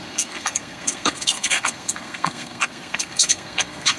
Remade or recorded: remade